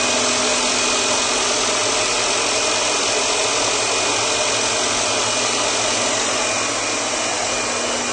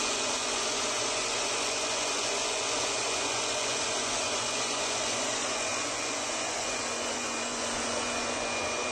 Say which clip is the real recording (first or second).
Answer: first